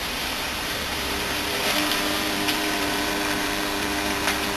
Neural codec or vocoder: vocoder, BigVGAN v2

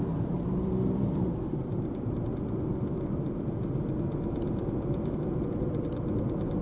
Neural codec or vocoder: vocoder, BigVGAN v2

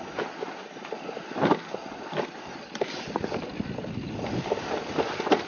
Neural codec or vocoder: none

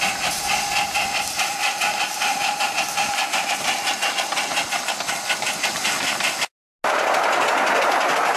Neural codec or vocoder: none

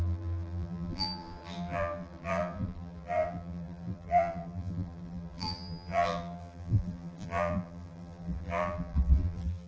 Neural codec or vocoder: vocoder, BigVGAN v2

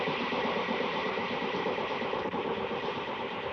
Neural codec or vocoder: vocoder, BigVGAN v2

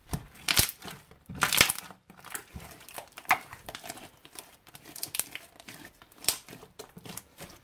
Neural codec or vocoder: vocoder, BigVGAN v2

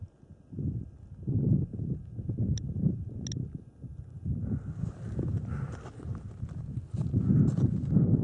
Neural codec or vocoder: none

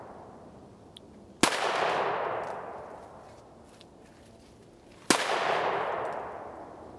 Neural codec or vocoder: none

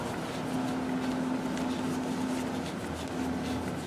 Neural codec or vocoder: none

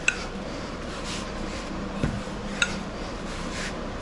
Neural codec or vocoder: vocoder, BigVGAN v2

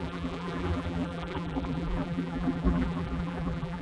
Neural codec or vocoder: vocoder, BigVGAN v2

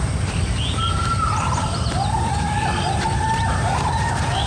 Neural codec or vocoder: vocoder, BigVGAN v2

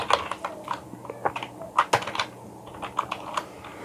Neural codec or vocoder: none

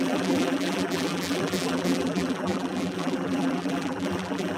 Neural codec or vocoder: vocoder, BigVGAN v2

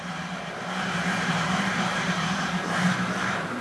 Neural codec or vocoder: vocoder, BigVGAN v2